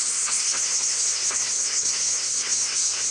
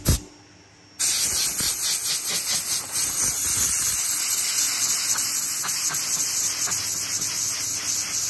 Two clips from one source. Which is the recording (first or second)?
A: second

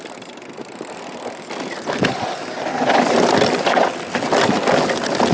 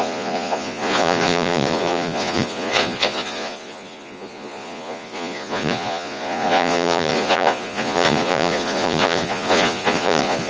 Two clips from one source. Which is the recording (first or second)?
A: first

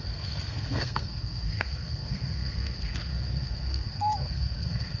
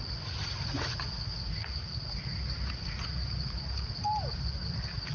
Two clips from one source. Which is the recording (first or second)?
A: second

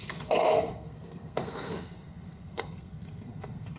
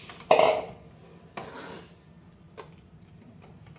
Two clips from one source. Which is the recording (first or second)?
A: second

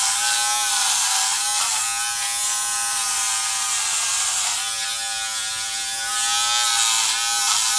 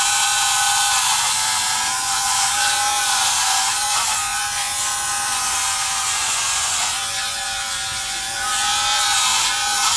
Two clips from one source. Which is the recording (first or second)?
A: first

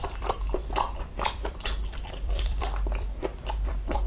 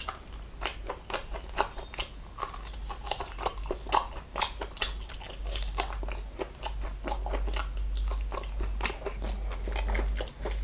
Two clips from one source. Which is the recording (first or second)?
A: second